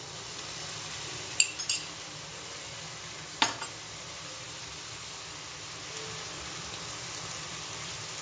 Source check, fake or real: real